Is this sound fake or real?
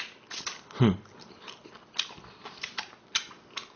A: real